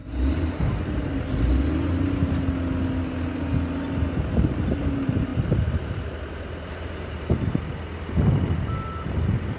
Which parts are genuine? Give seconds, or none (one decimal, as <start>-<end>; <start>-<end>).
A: 1.1-5.3; 7.5-9.6